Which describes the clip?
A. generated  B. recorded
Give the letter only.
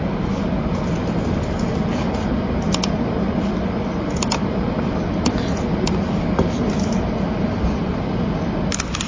B